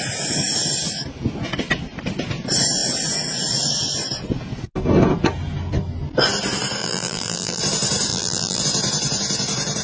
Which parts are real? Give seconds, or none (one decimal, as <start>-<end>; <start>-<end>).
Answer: 0.0-6.8; 7.6-8.1; 8.6-9.8